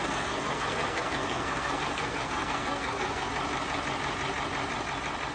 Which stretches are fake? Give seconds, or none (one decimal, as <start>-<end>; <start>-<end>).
0.0-3.3